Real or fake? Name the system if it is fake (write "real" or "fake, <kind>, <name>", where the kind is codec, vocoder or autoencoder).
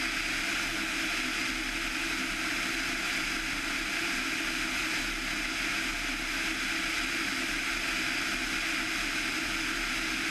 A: real